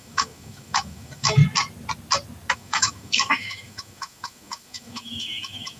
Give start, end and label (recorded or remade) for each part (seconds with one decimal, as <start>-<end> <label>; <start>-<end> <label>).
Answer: 0.0-1.4 remade; 1.4-2.5 recorded; 2.5-5.8 remade